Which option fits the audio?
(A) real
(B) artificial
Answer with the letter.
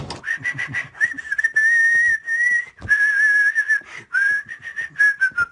A